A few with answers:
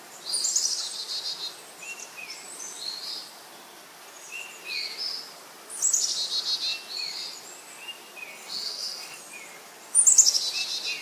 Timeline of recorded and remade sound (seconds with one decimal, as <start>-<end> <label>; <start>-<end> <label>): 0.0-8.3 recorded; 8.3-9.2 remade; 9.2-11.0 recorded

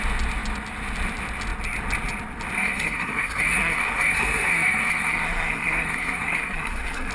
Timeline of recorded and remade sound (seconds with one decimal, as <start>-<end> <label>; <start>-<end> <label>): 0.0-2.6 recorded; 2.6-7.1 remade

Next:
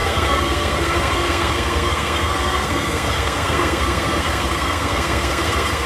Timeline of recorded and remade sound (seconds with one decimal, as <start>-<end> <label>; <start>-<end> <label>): 0.0-5.9 remade